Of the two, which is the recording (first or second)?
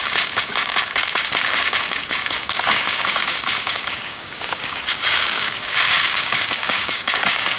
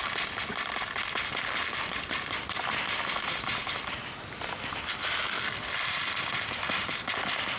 second